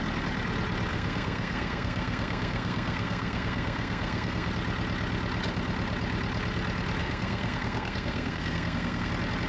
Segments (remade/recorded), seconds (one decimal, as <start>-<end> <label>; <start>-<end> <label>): 0.0-0.9 recorded; 0.9-4.5 remade; 4.5-7.0 recorded; 7.0-9.1 remade; 9.1-9.5 recorded